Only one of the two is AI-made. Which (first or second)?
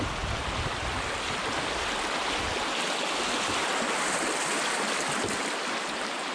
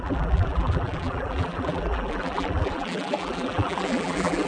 second